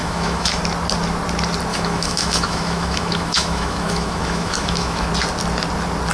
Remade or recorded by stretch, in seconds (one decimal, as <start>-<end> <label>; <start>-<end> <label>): 0.0-0.6 remade; 0.6-1.7 recorded; 1.7-5.1 remade; 5.1-6.1 recorded